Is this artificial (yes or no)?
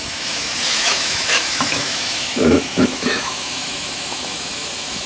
yes